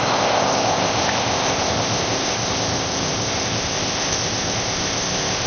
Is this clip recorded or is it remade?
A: remade